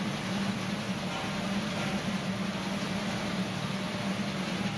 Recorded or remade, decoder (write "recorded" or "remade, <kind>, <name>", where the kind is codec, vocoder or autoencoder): recorded